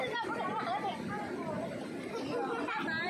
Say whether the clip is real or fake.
real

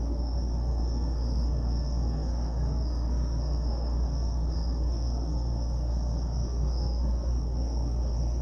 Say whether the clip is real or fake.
fake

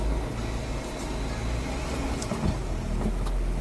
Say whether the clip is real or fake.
real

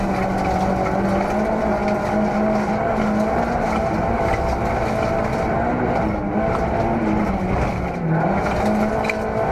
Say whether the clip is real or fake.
real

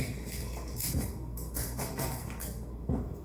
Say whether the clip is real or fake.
fake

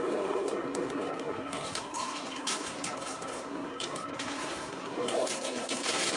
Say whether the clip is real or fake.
fake